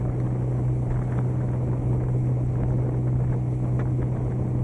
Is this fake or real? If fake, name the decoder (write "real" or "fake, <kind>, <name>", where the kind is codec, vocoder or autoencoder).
real